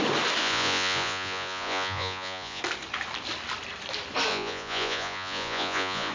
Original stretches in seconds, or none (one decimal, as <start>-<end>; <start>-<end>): 0.0-0.4; 2.6-4.3